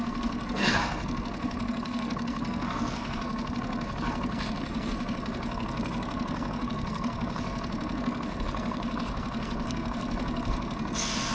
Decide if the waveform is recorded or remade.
remade